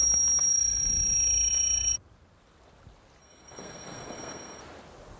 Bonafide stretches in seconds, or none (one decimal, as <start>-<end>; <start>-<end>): 0.0-3.2; 4.6-5.2

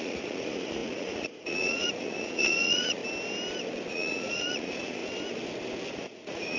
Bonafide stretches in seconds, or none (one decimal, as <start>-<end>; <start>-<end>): 3.0-3.9; 5.0-5.9

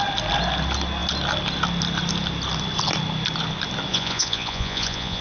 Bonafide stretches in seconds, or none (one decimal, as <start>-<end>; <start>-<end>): 0.0-3.9

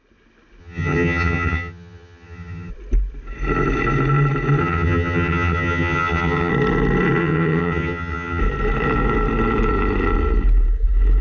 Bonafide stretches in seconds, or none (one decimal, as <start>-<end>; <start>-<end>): 0.0-0.6; 2.7-4.6; 6.5-7.2; 8.4-11.2

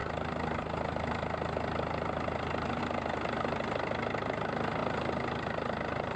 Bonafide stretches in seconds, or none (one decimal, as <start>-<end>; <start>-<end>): 0.0-6.2

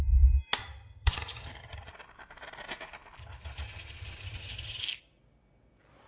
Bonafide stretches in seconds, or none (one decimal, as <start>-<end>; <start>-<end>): 0.0-0.6; 1.9-3.2; 4.8-6.1